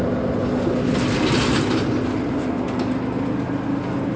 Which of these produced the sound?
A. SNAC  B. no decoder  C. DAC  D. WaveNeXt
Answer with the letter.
B